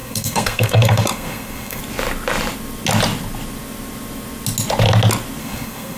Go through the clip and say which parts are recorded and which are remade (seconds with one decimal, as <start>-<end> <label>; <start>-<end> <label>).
0.0-1.8 remade; 1.8-5.4 recorded; 5.4-6.0 remade